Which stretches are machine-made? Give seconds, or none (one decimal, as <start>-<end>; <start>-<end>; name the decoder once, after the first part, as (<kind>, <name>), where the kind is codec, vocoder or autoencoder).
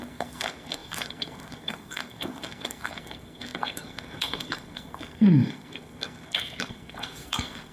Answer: 0.0-7.7 (codec, SNAC)